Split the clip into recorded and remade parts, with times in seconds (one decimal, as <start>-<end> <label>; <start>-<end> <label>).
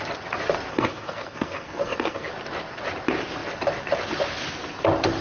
0.0-0.7 recorded; 0.7-2.3 remade; 2.3-5.2 recorded